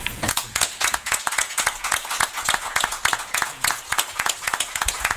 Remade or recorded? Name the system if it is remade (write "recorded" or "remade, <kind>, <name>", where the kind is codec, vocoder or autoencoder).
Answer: remade, vocoder, Vocos